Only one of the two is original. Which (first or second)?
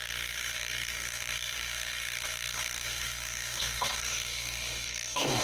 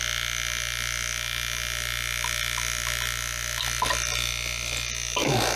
second